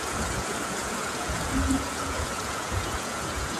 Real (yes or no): no